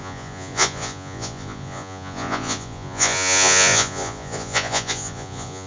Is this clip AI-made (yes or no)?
yes